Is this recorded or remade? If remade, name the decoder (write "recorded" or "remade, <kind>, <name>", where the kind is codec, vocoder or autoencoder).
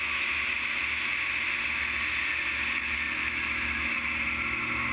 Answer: recorded